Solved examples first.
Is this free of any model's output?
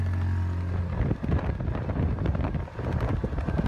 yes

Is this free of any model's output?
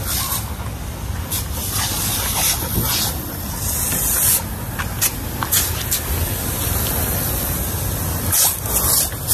yes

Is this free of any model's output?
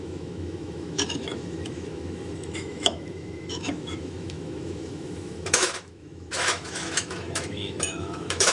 no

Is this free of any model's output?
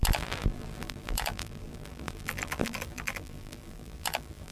no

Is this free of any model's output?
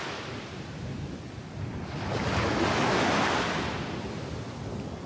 yes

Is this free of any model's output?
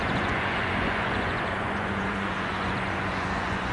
no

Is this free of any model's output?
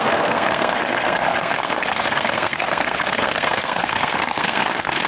no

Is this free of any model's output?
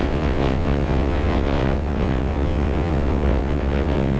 no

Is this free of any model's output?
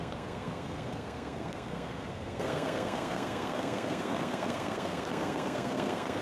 no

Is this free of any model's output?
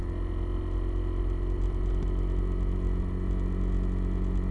yes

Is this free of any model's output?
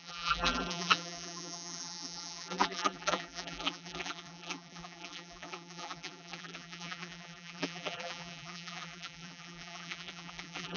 no